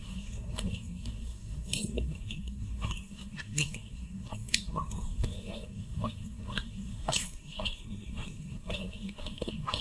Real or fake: fake